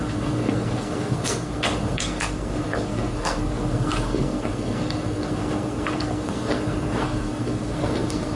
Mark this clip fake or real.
fake